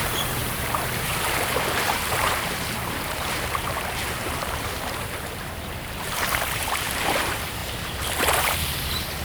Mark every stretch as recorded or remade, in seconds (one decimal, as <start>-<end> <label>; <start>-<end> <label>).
0.0-9.2 remade